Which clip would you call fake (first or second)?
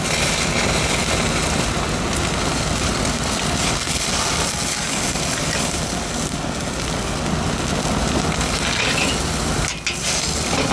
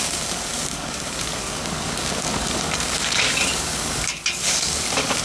second